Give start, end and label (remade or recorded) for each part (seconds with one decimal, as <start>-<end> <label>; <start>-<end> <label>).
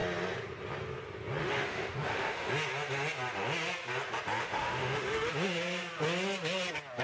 0.0-1.4 recorded; 1.4-2.5 remade; 2.5-4.4 recorded; 4.4-5.3 remade; 5.3-7.0 recorded